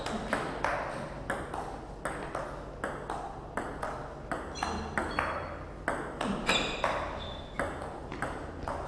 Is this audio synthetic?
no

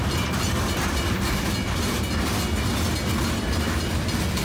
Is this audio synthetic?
no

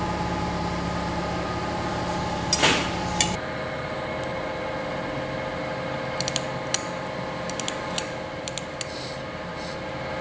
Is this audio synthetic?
no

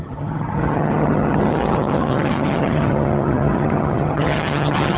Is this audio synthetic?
yes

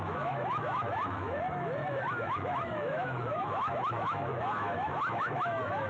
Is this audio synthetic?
yes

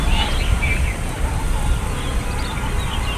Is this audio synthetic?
no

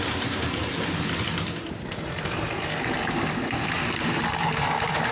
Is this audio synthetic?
yes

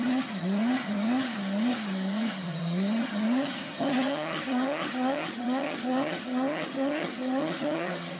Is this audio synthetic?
yes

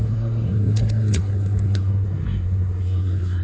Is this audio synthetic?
yes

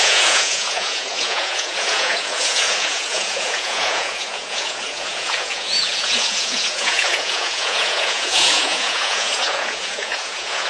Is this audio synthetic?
yes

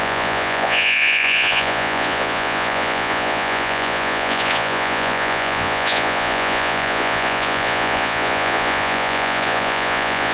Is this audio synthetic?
yes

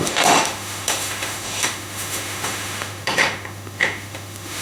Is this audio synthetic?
yes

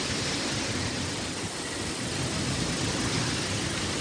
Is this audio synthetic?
no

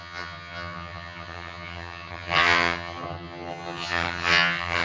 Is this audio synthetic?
yes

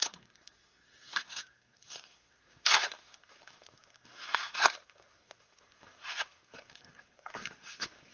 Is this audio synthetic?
yes